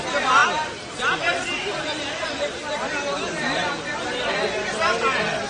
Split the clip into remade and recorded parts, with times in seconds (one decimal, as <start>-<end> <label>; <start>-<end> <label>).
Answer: 0.0-5.5 recorded